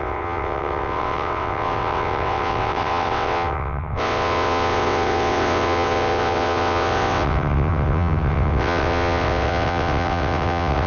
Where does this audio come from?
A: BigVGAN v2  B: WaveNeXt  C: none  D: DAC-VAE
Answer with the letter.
B